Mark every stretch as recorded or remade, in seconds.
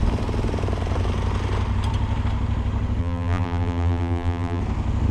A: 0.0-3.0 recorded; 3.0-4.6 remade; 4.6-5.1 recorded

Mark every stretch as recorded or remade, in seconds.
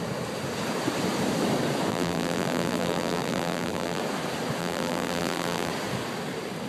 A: 0.0-1.9 recorded; 1.9-4.0 remade; 4.0-4.6 recorded; 4.6-5.7 remade; 5.7-6.7 recorded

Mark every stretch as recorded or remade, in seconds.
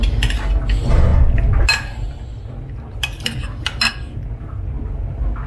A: 0.0-5.5 recorded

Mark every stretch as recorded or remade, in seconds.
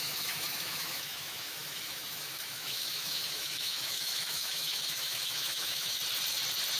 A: 0.0-6.0 remade; 6.0-6.8 recorded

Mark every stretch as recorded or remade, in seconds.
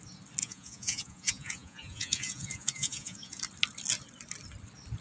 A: 0.0-0.4 recorded; 0.4-3.4 remade; 3.4-5.0 recorded